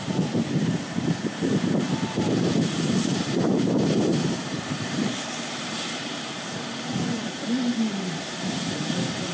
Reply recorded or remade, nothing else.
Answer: remade